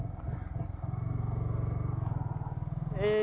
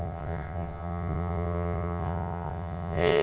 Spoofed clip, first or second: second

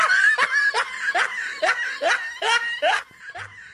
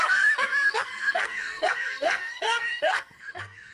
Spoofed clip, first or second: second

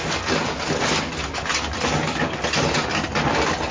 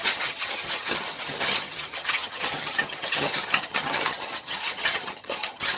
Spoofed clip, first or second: second